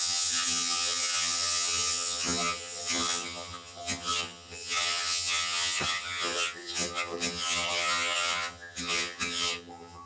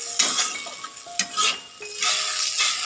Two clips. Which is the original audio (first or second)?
second